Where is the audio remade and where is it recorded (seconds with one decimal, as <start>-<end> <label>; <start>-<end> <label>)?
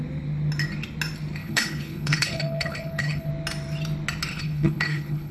0.0-1.4 recorded; 1.4-3.3 remade; 3.3-4.3 recorded; 4.3-5.3 remade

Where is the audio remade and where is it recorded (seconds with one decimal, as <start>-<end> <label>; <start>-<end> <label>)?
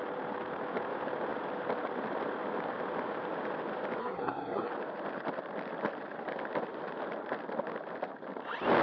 0.0-4.0 recorded; 4.0-4.7 remade; 4.7-8.8 recorded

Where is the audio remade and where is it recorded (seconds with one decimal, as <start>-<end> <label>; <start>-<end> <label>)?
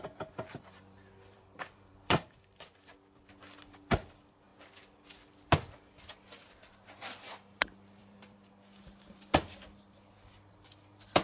0.0-4.5 remade; 4.5-7.6 recorded; 7.6-11.2 remade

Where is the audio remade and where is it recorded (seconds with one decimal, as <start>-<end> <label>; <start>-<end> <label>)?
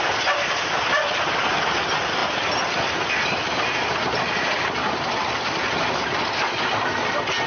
0.0-7.5 recorded